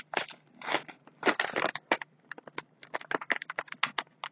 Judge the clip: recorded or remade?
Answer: recorded